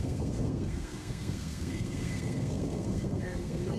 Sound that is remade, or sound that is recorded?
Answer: remade